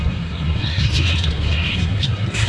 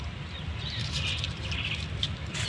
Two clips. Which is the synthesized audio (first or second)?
first